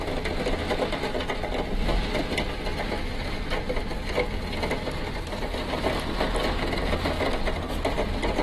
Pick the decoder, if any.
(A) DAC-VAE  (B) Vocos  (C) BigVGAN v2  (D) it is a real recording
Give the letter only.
D